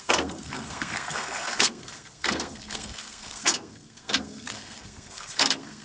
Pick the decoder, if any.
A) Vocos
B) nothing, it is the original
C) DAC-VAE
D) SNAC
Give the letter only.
D